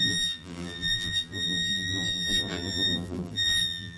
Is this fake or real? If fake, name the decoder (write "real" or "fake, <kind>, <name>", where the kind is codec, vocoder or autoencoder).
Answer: fake, vocoder, BigVGAN v2